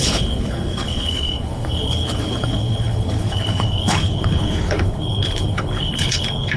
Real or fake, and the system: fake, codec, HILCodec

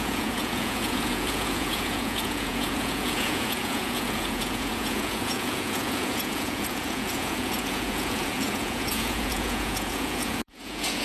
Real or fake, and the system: fake, vocoder, Vocos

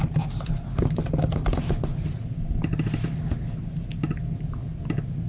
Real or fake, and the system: real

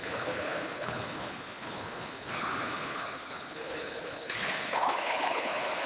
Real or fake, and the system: fake, codec, HILCodec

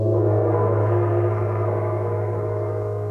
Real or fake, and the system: fake, codec, SNAC